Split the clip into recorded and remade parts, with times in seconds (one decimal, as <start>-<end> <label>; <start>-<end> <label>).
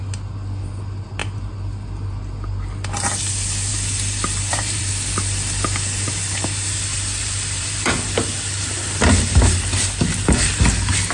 0.0-3.7 recorded; 3.7-4.9 remade; 4.9-6.9 recorded; 6.9-7.9 remade; 7.9-11.1 recorded